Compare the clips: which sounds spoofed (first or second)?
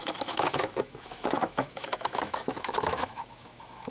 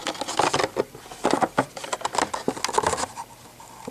first